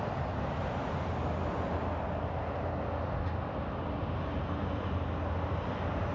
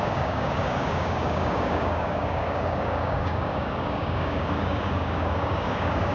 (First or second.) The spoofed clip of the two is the second